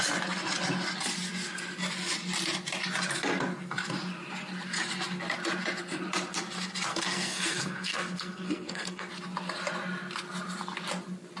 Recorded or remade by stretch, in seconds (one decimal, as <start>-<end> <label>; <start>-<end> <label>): 0.0-6.9 recorded; 6.9-9.1 remade; 9.1-11.4 recorded